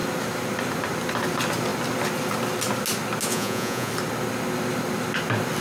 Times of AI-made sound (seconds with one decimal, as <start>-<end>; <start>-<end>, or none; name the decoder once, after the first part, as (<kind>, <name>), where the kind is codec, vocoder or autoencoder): 3.3-3.9 (vocoder, Vocos)